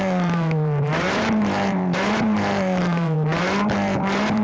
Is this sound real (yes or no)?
no